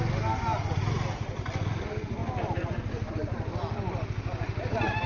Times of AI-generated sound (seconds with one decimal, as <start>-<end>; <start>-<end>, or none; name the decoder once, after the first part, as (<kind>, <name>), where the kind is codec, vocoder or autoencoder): none